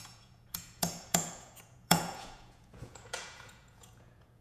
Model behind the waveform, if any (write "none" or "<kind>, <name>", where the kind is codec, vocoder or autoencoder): vocoder, Vocos